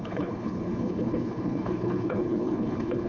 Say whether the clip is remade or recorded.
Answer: remade